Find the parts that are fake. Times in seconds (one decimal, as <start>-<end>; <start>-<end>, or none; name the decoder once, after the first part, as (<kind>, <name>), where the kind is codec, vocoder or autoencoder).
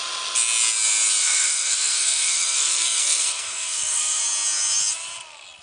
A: 1.2-4.2 (codec, SNAC)